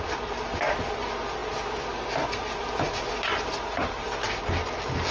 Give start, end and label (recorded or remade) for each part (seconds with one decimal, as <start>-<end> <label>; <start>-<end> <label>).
0.0-5.1 recorded